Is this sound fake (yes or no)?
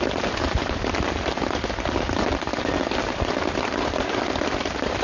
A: no